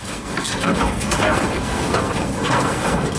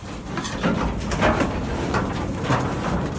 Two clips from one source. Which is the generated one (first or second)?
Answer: first